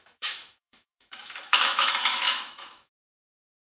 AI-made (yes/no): yes